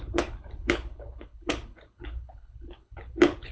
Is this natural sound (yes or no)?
no